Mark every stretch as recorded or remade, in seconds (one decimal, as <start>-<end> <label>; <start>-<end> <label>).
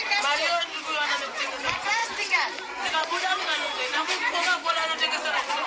0.0-2.0 recorded; 2.0-4.3 remade; 4.3-5.7 recorded